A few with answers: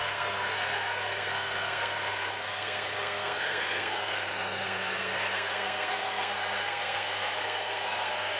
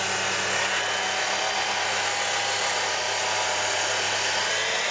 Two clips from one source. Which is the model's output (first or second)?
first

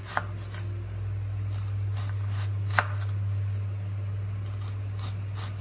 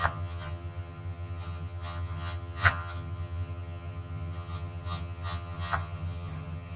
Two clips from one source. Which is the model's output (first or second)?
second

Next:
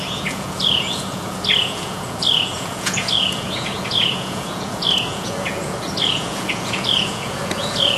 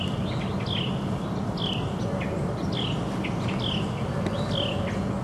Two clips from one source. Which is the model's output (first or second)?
first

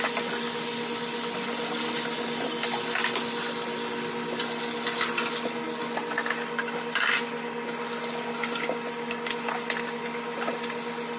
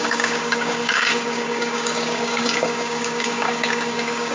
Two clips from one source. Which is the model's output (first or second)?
second